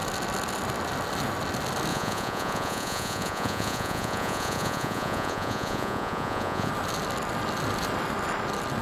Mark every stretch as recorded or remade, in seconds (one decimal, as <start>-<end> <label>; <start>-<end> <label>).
0.0-1.9 recorded; 1.9-6.7 remade; 6.7-8.8 recorded